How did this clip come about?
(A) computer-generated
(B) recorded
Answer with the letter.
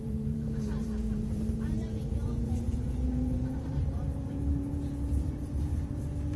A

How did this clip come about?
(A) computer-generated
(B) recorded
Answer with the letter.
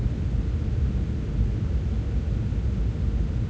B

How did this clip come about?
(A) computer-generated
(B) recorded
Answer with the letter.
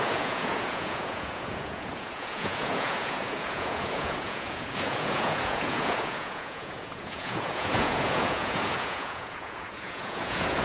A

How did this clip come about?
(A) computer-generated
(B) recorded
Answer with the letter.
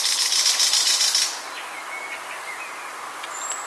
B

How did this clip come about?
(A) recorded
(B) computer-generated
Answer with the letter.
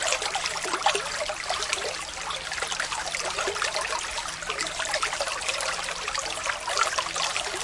A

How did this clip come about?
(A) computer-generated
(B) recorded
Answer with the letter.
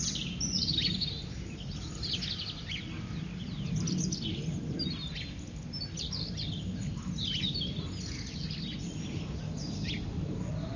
B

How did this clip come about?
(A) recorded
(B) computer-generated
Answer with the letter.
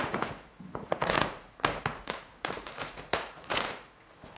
B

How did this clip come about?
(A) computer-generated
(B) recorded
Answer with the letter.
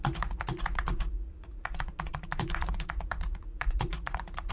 A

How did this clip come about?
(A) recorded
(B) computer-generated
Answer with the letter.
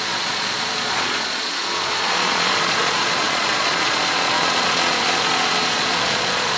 B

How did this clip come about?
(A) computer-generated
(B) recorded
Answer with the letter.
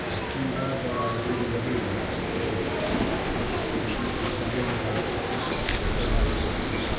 B